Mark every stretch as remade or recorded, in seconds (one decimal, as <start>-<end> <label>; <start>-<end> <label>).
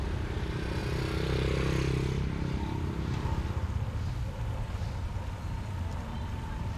0.0-6.8 recorded